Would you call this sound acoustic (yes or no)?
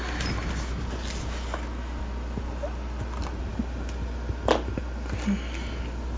yes